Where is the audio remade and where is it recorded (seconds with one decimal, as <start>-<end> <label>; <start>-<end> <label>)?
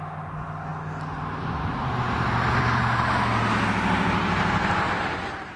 0.0-5.6 recorded